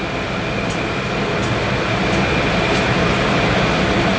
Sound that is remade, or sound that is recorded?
recorded